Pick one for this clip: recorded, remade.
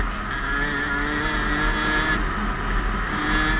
recorded